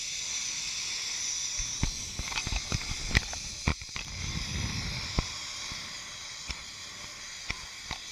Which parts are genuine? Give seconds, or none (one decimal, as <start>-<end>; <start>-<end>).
0.0-3.7; 4.2-8.1